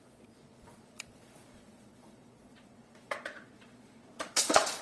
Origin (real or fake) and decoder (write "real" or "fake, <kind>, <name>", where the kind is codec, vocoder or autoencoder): fake, vocoder, Vocos